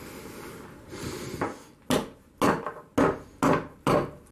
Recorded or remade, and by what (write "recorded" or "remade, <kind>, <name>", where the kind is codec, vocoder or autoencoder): recorded